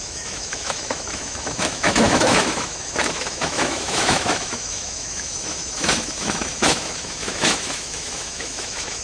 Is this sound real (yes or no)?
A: no